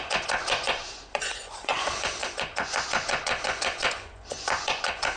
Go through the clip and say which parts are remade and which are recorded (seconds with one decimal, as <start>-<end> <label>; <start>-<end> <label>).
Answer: 0.0-5.2 remade